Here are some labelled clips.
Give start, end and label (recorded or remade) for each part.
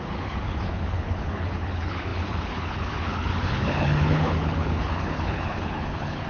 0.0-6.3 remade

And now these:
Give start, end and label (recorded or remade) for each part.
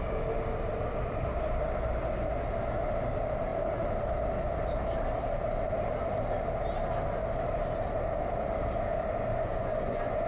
0.0-9.3 recorded; 9.3-10.3 remade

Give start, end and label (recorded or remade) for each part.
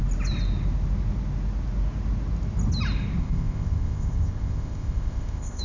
0.0-3.2 recorded; 3.2-5.6 remade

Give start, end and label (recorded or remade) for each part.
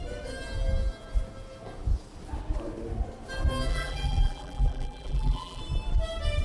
0.0-3.7 recorded; 3.7-5.6 remade; 5.6-6.4 recorded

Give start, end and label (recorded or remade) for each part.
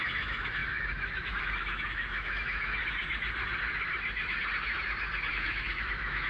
0.0-2.8 remade; 2.8-5.3 recorded; 5.3-6.3 remade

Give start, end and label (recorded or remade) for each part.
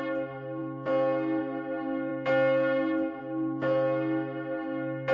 0.0-5.1 recorded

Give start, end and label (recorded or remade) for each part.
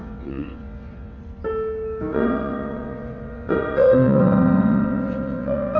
0.0-1.2 remade; 1.2-2.1 recorded; 2.1-5.8 remade